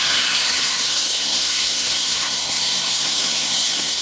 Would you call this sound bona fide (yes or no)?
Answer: no